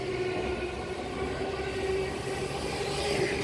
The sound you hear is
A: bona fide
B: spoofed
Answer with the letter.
A